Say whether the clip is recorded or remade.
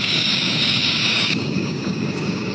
remade